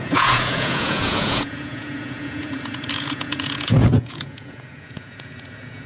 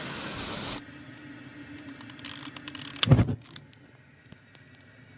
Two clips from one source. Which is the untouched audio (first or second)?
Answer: second